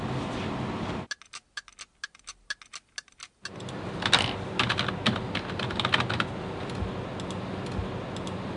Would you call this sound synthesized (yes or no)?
no